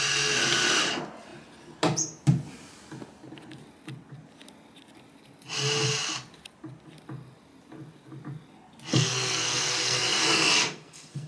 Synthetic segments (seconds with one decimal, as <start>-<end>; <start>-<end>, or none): 8.9-11.3